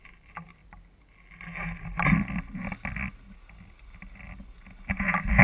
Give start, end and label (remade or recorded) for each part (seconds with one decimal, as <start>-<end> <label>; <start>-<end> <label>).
0.0-5.4 recorded